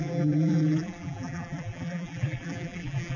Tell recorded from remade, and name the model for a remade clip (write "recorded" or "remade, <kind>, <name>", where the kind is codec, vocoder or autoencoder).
remade, vocoder, BigVGAN v2